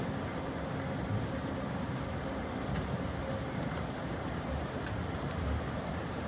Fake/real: real